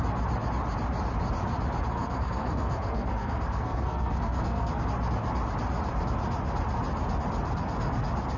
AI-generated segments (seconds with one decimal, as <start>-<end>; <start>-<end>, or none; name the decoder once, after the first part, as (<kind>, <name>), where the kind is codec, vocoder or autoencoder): 1.9-4.8 (codec, SNAC)

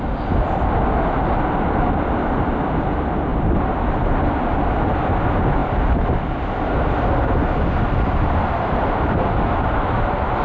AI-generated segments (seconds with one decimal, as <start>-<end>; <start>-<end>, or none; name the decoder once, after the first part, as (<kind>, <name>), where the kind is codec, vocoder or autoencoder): none